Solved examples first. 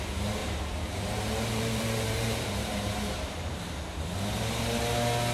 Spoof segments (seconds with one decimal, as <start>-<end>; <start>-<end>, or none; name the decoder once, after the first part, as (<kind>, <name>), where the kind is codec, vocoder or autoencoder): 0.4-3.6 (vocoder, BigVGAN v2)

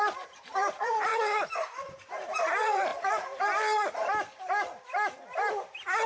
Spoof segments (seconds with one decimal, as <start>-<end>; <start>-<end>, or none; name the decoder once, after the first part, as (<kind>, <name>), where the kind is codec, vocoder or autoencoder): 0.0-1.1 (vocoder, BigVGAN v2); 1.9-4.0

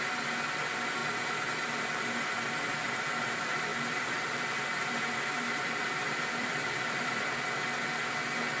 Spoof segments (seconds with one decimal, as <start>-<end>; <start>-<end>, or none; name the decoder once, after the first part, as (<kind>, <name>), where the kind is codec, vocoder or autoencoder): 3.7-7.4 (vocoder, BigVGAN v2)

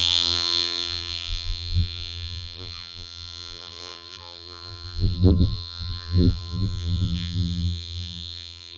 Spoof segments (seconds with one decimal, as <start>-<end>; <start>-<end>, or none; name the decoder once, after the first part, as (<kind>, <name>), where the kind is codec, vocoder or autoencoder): 0.0-8.8 (vocoder, BigVGAN v2)

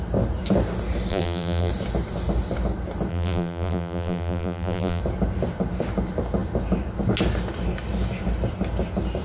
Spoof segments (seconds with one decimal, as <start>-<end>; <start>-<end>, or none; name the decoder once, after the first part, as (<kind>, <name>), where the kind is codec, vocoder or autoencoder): 1.1-1.7 (vocoder, BigVGAN v2); 3.1-5.0